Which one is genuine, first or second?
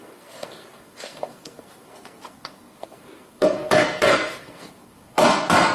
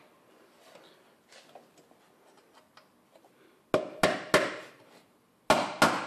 second